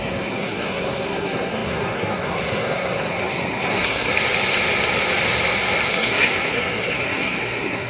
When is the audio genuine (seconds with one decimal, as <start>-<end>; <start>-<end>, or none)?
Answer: 4.1-5.9